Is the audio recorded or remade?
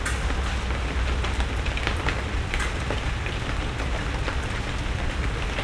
recorded